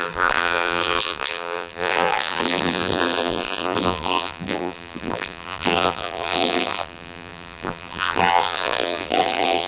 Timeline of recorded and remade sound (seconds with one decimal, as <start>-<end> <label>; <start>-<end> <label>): 0.0-9.7 remade